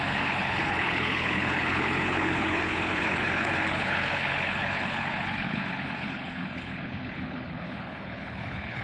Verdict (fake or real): fake